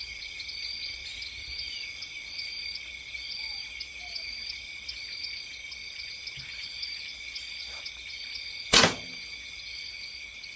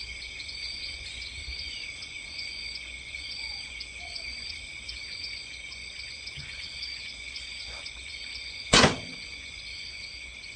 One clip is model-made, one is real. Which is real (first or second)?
first